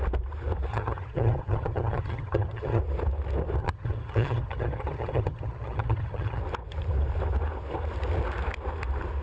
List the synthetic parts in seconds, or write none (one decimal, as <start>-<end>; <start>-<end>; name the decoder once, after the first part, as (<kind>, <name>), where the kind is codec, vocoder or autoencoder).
0.7-2.8 (vocoder, HiFi-GAN); 3.6-6.4